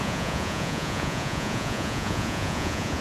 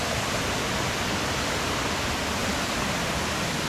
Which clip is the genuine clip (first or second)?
second